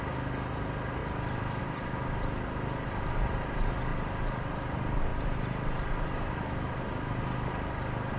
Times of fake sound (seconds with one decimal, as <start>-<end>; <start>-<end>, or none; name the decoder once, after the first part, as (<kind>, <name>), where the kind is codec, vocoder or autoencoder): none